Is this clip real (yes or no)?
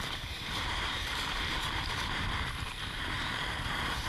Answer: no